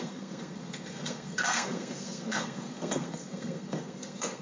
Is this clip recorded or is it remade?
remade